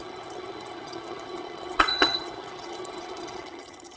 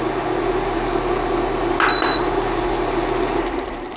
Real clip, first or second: second